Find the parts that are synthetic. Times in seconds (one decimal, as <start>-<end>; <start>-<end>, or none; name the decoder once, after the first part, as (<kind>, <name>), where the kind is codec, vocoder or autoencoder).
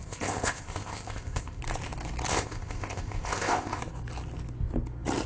0.0-1.6 (codec, ZipCodec); 2.3-3.8